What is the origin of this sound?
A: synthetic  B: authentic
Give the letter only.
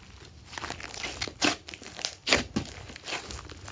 B